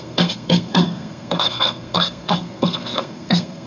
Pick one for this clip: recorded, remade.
remade